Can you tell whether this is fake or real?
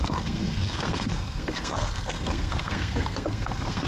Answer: fake